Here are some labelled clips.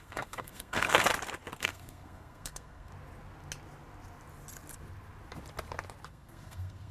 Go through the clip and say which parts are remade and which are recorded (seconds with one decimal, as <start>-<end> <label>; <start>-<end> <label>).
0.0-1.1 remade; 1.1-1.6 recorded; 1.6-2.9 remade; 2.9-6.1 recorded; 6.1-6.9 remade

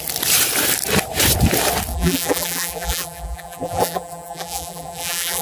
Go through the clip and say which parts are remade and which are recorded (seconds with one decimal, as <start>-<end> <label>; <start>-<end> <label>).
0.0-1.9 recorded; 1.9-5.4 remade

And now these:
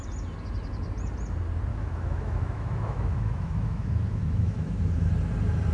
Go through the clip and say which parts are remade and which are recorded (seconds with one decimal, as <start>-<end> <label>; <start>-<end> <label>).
0.0-1.7 recorded; 1.7-5.1 remade; 5.1-5.7 recorded